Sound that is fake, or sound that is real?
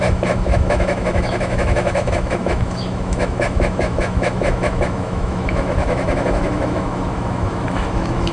fake